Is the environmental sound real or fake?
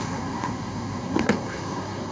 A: fake